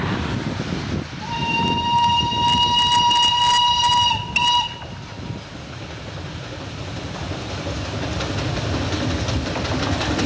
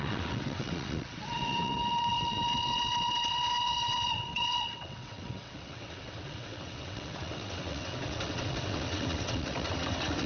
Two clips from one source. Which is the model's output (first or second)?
second